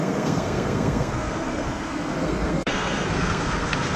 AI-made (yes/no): yes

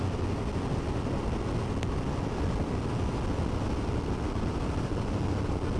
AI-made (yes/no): no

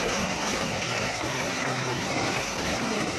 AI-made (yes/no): yes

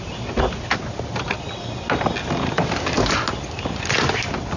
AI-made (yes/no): no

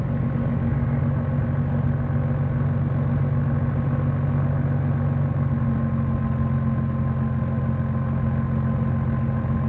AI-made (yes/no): no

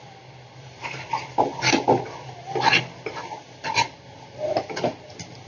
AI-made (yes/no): no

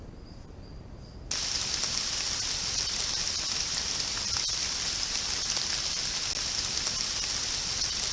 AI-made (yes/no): no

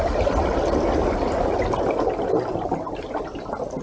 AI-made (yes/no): no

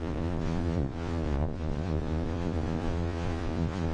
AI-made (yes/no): yes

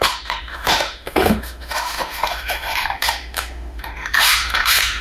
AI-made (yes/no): yes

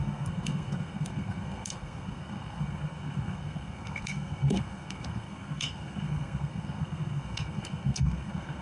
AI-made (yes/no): yes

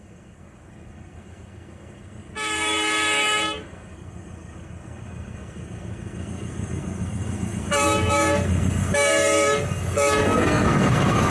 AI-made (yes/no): yes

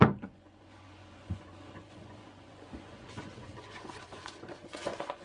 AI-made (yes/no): yes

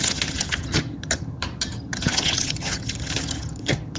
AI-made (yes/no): yes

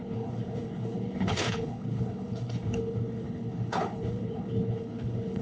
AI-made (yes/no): yes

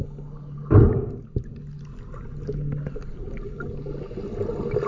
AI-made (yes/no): no